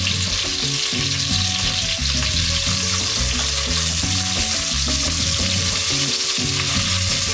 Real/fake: real